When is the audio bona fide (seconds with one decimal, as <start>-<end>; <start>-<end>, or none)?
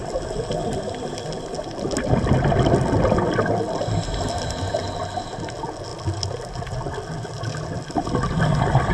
0.0-8.9